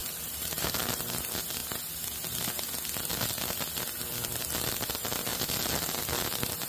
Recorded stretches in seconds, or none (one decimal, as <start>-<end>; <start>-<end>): 0.8-6.7